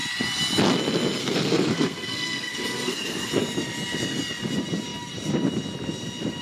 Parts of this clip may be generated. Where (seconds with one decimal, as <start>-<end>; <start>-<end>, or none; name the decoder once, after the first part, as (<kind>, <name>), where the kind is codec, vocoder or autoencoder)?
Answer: 1.2-3.3 (codec, SNAC)